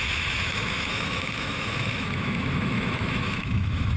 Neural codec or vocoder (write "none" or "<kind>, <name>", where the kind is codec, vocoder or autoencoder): autoencoder, DAC-VAE